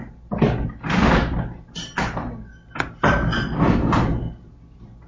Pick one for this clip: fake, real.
real